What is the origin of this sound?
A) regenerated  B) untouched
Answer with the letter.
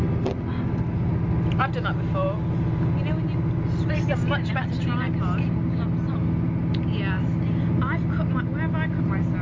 B